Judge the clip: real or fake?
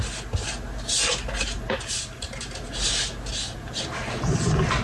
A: real